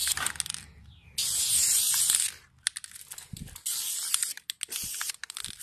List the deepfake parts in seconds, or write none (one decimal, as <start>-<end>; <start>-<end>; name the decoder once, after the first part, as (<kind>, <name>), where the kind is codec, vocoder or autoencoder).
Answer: none